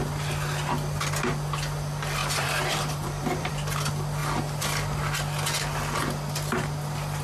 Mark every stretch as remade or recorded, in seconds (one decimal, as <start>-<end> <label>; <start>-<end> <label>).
0.0-2.2 recorded; 2.2-3.5 remade; 3.5-7.2 recorded